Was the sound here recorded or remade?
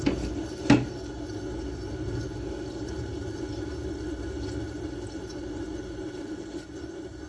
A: recorded